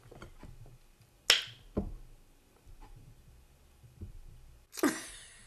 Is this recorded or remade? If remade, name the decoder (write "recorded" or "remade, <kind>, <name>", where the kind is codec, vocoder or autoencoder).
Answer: recorded